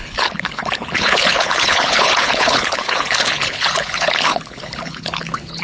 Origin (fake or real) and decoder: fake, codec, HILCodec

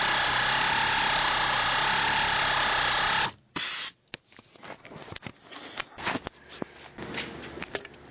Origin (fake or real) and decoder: real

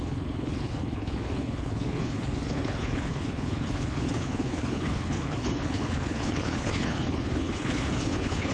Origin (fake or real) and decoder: fake, codec, HILCodec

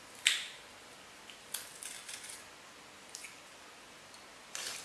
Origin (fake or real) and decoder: real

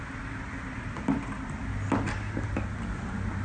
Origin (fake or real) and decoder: real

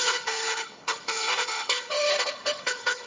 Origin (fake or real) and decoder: fake, codec, HILCodec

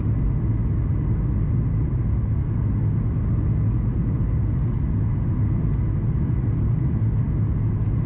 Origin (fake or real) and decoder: real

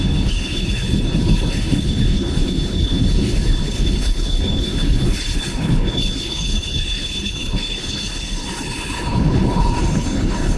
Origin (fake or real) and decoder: fake, codec, HILCodec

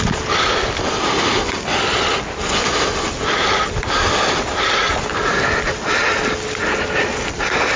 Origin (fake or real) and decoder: real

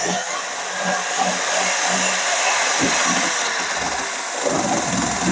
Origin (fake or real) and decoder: real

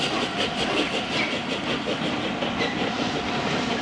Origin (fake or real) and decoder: real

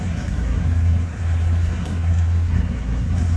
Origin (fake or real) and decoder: fake, codec, SNAC